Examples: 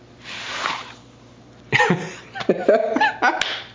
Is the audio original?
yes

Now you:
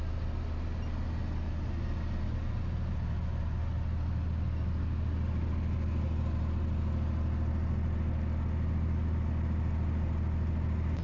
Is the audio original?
yes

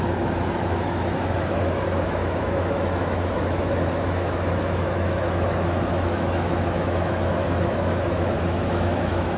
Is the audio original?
no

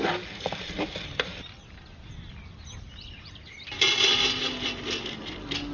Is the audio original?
yes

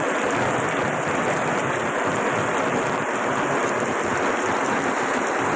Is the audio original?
no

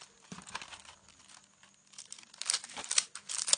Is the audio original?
yes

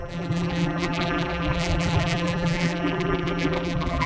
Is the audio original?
no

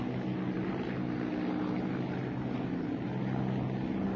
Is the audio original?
yes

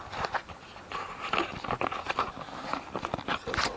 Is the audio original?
yes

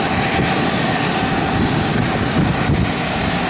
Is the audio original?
yes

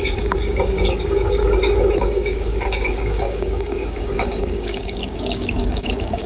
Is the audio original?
no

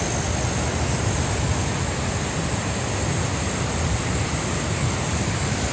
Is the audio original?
yes